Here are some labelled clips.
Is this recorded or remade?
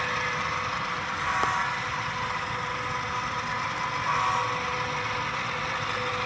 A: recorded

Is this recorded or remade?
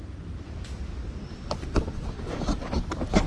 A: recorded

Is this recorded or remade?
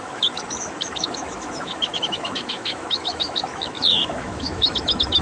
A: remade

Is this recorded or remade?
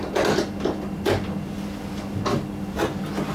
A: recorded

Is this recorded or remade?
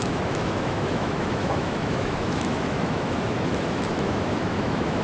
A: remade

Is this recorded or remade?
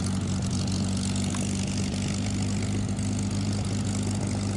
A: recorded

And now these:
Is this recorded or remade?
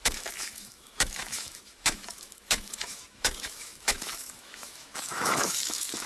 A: remade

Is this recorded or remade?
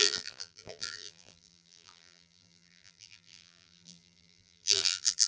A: remade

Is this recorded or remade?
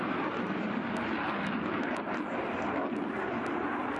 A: recorded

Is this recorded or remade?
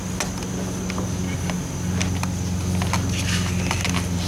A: recorded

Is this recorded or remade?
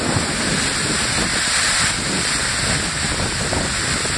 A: recorded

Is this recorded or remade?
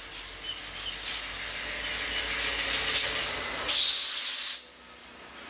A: recorded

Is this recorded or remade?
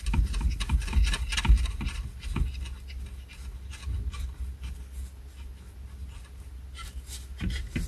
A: recorded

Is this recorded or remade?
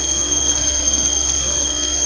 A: remade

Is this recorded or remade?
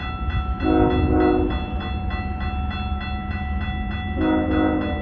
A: recorded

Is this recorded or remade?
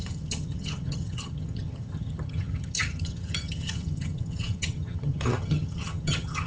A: remade